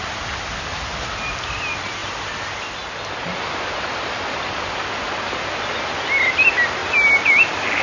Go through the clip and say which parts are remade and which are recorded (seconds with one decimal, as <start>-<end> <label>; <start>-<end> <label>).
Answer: 0.0-7.8 recorded